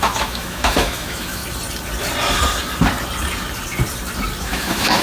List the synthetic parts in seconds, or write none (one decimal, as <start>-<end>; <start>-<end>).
0.0-1.4; 4.4-5.0